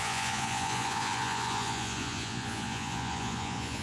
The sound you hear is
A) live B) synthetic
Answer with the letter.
B